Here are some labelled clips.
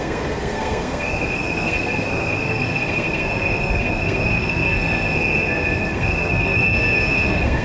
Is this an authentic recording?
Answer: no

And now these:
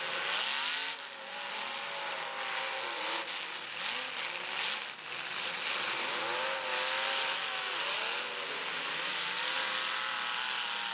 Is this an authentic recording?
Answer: yes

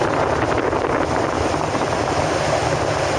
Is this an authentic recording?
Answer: yes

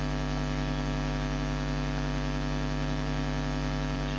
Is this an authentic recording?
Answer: yes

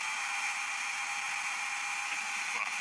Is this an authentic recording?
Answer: yes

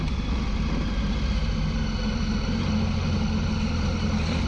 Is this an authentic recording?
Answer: yes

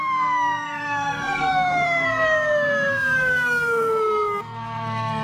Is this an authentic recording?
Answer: no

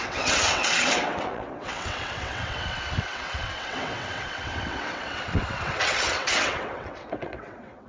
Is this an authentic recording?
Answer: no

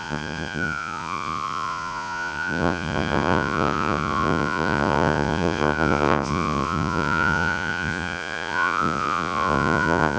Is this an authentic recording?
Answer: no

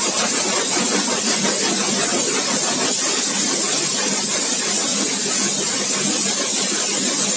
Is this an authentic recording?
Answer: yes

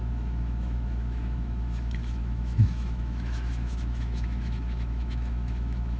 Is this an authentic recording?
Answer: no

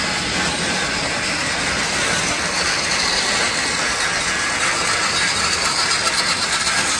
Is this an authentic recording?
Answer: yes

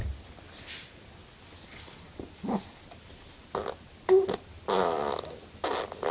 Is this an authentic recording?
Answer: yes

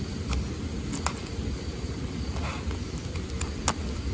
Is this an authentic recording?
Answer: yes